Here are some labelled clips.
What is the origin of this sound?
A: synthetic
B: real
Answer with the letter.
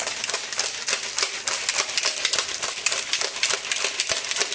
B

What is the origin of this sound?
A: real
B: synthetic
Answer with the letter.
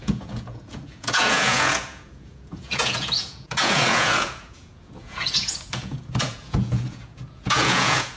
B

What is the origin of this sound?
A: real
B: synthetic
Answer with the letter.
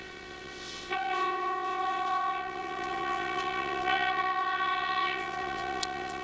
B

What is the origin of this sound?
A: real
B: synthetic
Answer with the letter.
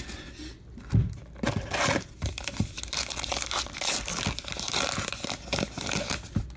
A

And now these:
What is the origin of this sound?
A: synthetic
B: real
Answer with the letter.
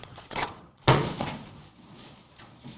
A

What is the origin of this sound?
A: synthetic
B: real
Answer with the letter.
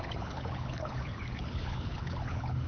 A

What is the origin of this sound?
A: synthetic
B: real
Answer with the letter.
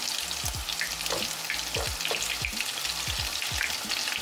B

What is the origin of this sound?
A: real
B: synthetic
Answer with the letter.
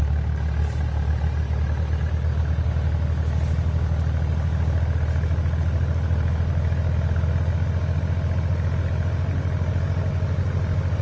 A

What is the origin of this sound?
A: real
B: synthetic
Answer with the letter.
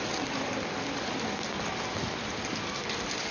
A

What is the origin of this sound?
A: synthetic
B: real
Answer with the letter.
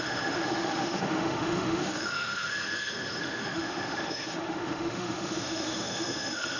A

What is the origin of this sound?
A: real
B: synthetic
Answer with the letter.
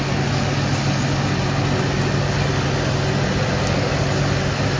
A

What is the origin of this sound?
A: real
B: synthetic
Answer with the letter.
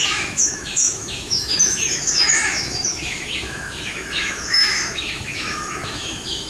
B